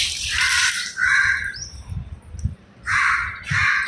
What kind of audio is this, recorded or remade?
remade